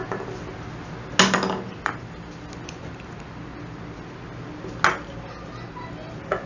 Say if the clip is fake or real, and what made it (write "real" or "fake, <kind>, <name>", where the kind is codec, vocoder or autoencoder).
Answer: real